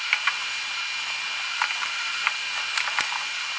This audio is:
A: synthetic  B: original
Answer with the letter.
B